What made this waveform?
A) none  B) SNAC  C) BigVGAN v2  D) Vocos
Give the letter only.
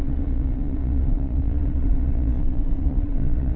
D